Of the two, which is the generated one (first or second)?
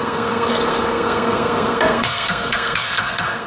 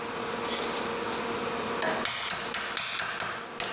first